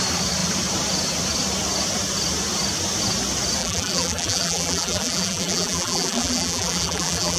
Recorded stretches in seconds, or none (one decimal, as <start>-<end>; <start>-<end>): 0.0-3.6